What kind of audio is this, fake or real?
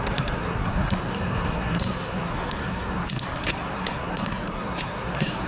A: fake